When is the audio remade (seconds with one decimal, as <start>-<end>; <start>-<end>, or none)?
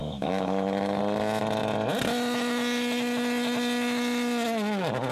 0.0-1.0